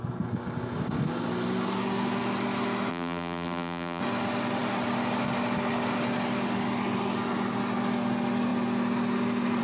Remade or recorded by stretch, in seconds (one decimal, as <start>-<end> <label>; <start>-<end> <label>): 0.0-2.9 recorded; 2.9-4.0 remade; 4.0-9.6 recorded